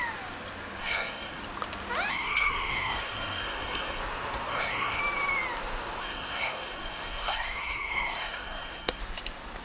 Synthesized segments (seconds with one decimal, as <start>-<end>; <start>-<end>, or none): 0.8-1.4; 2.1-4.0; 4.5-5.0; 6.0-9.0